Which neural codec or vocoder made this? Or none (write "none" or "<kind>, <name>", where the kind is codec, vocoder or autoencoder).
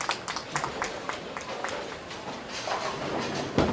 none